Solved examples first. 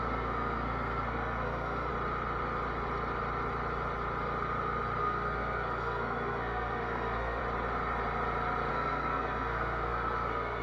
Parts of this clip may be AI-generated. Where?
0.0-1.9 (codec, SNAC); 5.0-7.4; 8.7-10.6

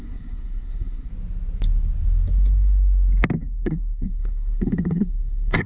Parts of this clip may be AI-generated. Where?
0.0-1.1 (codec, SNAC); 3.4-5.7

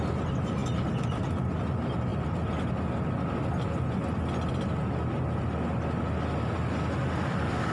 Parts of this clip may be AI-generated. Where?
none

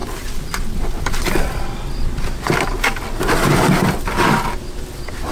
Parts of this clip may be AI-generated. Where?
none

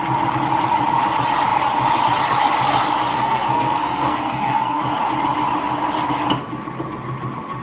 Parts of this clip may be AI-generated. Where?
3.1-4.8 (codec, SNAC)

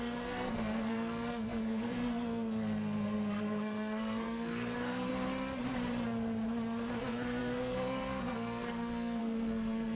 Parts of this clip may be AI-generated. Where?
0.0-5.1 (codec, SNAC); 7.0-9.9

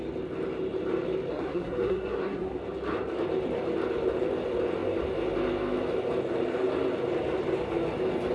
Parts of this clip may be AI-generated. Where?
1.3-2.6 (codec, SNAC)